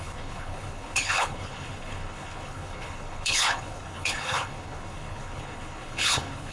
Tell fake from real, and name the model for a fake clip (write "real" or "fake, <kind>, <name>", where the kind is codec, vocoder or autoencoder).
fake, codec, HILCodec